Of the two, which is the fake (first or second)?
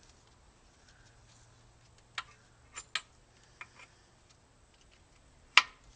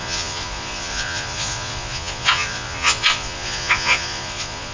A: second